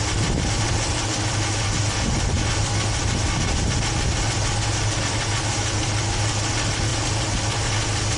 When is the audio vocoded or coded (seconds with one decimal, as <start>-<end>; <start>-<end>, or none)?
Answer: none